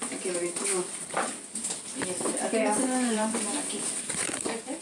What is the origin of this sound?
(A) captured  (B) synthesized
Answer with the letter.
B